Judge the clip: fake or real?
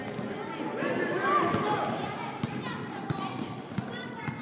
real